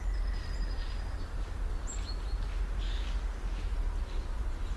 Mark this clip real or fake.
real